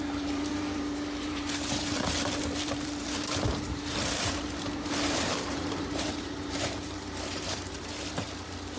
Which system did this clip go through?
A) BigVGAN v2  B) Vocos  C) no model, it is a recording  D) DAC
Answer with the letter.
A